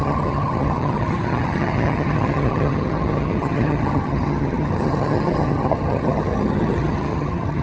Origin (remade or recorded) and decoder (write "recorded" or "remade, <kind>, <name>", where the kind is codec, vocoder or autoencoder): remade, vocoder, HiFi-GAN